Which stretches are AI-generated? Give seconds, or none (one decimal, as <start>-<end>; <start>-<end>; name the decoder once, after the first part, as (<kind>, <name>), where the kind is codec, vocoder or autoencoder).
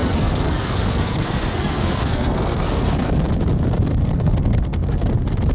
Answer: 0.0-3.3 (codec, SNAC); 3.9-5.1